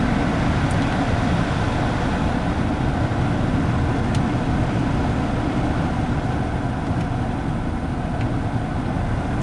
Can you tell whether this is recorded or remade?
recorded